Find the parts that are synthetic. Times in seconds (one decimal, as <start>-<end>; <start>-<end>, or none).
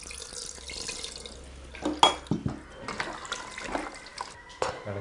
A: none